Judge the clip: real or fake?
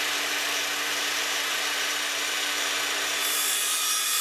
real